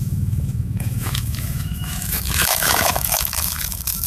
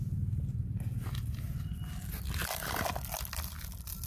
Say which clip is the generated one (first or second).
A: first